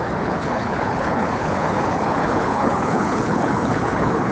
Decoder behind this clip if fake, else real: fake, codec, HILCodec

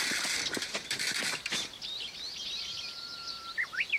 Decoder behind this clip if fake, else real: real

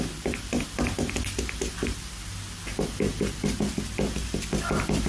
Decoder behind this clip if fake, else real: real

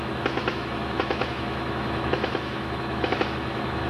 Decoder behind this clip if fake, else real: fake, autoencoder, DAC-VAE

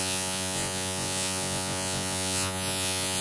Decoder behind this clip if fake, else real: fake, vocoder, Vocos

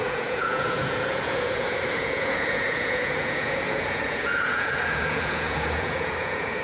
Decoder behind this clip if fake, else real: fake, vocoder, Vocos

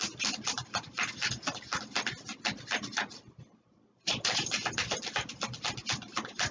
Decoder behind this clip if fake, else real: fake, vocoder, BigVGAN v2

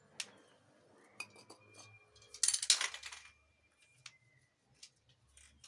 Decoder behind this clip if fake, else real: real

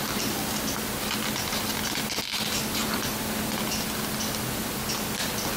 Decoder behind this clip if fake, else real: real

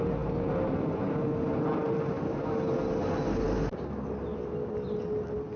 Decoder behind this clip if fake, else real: real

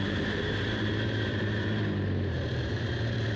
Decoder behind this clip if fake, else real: fake, vocoder, BigVGAN v2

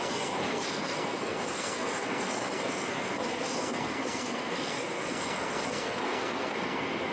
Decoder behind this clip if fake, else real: fake, codec, SNAC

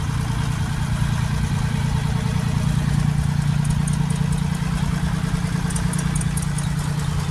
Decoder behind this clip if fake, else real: real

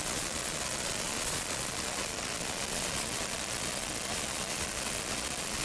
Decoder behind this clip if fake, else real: fake, vocoder, Vocos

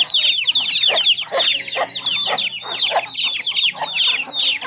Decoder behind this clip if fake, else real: real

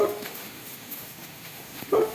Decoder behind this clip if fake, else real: fake, autoencoder, DAC-VAE